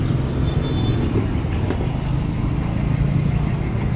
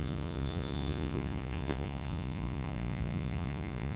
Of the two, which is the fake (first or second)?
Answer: second